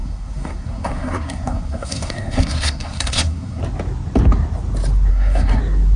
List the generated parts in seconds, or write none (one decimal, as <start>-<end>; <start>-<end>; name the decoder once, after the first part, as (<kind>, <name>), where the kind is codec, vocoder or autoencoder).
0.0-3.6 (codec, SNAC); 5.1-5.6